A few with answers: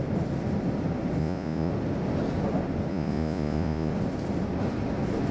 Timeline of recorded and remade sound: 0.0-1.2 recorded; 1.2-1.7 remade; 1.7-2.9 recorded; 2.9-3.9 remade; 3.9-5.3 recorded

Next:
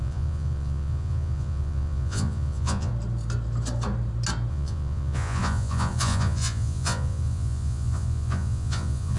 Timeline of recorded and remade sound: 0.0-2.9 remade; 2.9-4.5 recorded; 4.5-9.2 remade

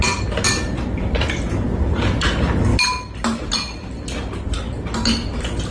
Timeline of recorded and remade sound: 0.0-5.7 recorded

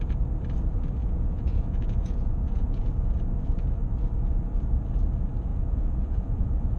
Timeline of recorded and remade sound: 0.0-1.0 recorded; 1.0-2.8 remade; 2.8-5.5 recorded; 5.5-6.8 remade

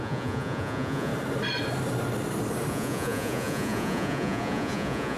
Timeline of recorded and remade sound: 0.0-1.1 remade; 1.1-2.7 recorded; 2.7-5.2 remade